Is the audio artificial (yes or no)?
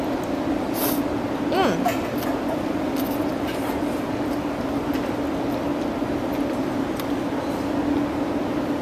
no